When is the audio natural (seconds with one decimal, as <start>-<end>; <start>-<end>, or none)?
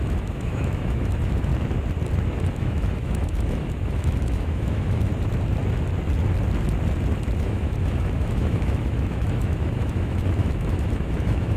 1.5-2.5; 5.1-7.4